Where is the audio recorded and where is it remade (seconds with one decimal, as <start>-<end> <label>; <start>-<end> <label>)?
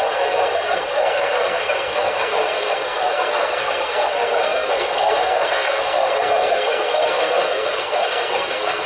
0.0-8.9 remade